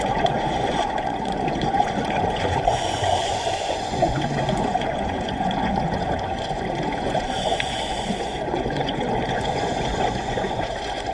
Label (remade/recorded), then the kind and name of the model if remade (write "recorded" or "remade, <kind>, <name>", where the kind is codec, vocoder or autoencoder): remade, vocoder, Vocos